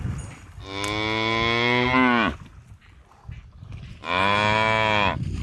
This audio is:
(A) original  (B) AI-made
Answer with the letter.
A